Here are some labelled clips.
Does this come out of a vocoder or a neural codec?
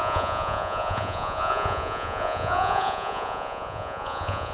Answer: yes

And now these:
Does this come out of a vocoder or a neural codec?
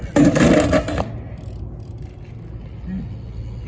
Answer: no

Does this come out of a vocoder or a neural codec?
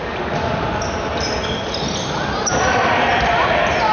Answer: no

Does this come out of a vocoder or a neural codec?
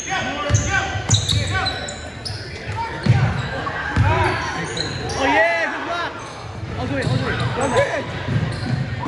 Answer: no